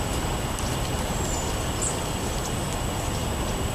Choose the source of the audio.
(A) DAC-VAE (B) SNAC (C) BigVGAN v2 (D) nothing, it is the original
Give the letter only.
D